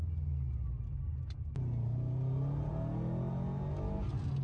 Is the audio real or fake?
real